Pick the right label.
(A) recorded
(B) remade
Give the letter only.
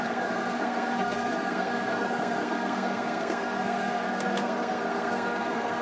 B